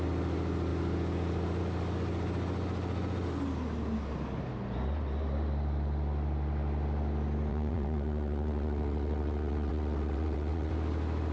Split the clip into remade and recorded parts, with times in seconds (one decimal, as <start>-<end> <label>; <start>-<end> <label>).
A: 0.0-7.5 recorded; 7.5-10.7 remade; 10.7-11.3 recorded